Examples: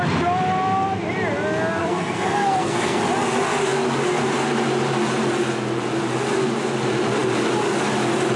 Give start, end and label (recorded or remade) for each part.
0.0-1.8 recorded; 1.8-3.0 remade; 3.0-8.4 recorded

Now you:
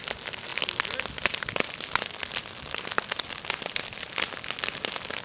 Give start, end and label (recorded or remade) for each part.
0.0-5.2 recorded

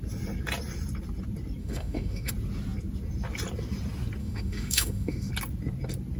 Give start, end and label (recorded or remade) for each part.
0.0-1.6 recorded; 1.6-2.3 remade; 2.3-4.2 recorded; 4.2-5.3 remade; 5.3-6.2 recorded

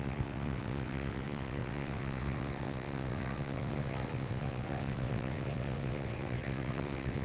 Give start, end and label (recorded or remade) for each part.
0.0-7.2 remade

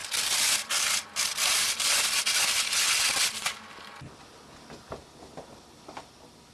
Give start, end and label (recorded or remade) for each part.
0.0-3.9 remade; 3.9-6.5 recorded